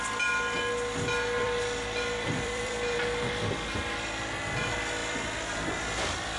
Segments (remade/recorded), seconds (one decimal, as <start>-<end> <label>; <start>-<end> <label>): 0.0-1.4 recorded; 1.4-3.5 remade; 3.5-5.0 recorded; 5.0-5.7 remade; 5.7-6.4 recorded